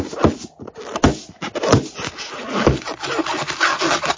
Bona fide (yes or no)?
yes